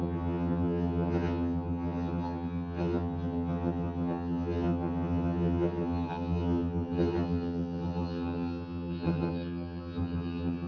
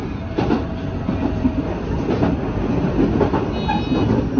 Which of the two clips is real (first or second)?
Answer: second